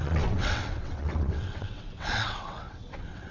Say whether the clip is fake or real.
fake